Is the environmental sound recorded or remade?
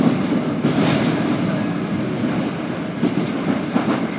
recorded